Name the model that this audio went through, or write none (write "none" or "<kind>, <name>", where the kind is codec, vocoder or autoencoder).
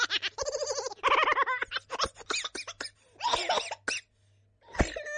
none